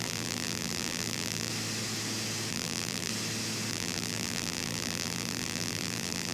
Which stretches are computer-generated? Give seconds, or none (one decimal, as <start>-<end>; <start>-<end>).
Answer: 0.0-1.5; 2.5-3.1; 3.7-6.3